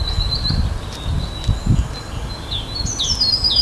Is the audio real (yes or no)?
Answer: yes